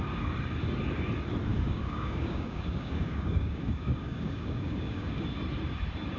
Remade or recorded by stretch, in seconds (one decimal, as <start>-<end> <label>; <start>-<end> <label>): 0.0-1.5 recorded; 1.5-5.2 remade; 5.2-6.2 recorded